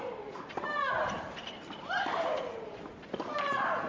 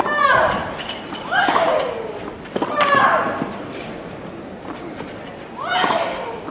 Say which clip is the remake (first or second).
first